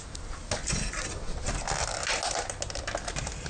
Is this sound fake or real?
real